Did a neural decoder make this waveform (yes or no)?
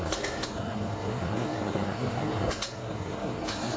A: yes